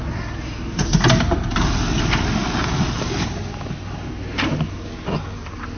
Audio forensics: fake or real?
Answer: real